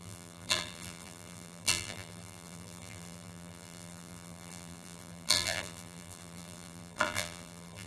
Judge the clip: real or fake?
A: fake